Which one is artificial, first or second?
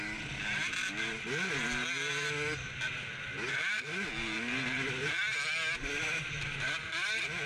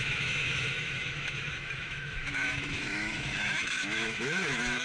second